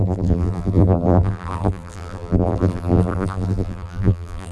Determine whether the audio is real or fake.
fake